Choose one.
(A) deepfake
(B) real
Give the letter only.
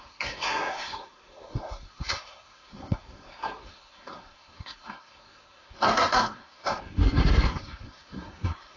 A